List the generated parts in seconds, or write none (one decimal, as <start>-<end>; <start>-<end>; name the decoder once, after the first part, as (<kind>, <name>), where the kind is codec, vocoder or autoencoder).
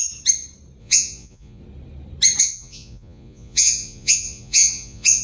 0.8-1.6 (vocoder, Vocos); 2.4-5.2